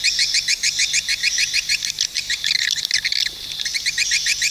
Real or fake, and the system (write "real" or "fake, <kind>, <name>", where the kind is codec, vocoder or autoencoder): real